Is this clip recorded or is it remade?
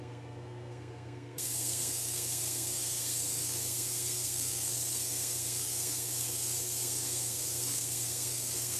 remade